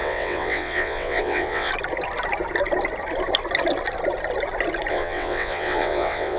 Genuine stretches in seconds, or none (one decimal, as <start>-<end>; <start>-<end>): 1.7-4.9